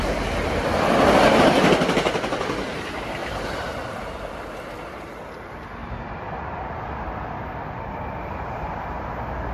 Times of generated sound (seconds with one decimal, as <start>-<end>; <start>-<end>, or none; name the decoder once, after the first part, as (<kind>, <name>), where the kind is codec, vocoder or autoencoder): none